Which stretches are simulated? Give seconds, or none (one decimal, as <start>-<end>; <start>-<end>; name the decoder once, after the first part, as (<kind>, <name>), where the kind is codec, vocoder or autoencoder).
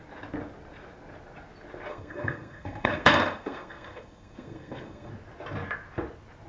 1.9-5.1 (codec, SNAC)